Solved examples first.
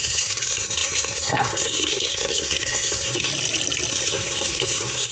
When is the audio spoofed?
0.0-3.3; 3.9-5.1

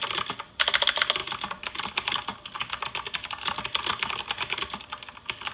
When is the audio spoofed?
none

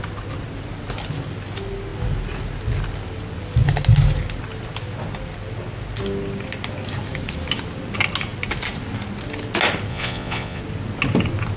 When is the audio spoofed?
9.9-10.6

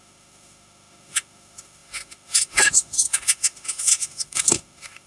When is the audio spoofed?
0.0-5.1

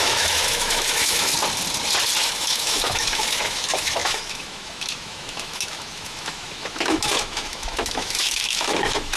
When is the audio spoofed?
0.0-1.3; 2.2-9.2

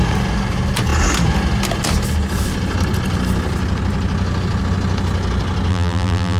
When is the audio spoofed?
5.7-6.4

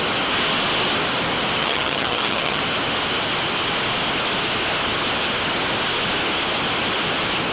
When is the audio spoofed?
1.6-2.6